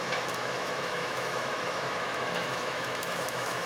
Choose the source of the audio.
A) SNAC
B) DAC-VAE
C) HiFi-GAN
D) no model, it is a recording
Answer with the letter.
B